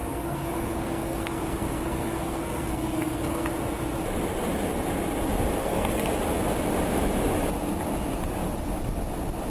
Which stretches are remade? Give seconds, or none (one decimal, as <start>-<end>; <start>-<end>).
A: 0.0-3.5; 5.6-6.1